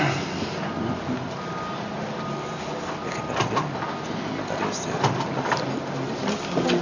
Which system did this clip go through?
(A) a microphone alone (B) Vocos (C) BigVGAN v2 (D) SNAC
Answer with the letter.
A